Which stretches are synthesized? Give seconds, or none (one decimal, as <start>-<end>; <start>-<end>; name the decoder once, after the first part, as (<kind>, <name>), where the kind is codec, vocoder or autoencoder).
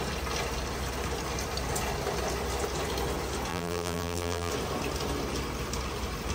3.5-4.5 (vocoder, BigVGAN v2)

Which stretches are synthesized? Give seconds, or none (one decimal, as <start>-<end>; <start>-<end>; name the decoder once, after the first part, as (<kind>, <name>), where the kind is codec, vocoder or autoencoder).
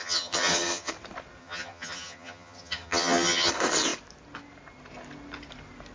0.0-0.9 (vocoder, HiFi-GAN); 1.4-3.5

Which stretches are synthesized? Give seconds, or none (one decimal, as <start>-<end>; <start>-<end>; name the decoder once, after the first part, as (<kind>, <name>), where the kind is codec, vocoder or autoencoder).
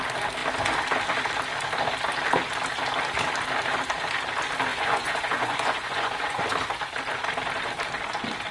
4.7-6.4 (vocoder, Vocos)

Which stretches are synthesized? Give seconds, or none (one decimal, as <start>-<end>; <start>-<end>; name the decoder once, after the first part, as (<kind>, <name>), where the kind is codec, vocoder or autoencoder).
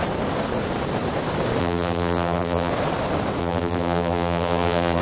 1.6-2.7 (vocoder, BigVGAN v2); 3.4-5.0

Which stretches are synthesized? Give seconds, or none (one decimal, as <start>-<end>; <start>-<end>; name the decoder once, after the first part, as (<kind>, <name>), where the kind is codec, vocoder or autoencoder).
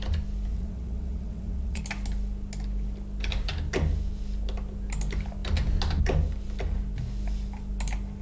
0.5-1.8 (vocoder, WaveNeXt)